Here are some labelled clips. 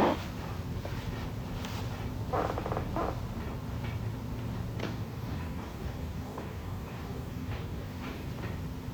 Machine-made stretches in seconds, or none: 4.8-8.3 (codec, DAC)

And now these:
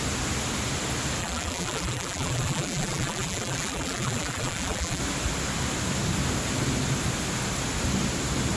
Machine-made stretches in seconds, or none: 1.2-5.0 (vocoder, BigVGAN v2)